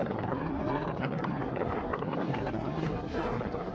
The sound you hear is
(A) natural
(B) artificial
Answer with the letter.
B